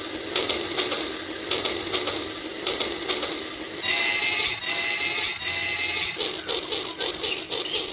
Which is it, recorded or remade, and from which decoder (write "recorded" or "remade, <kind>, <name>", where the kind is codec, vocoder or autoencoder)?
recorded